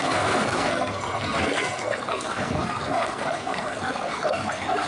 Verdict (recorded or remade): remade